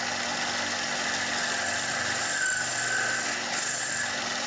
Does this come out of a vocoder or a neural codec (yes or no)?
no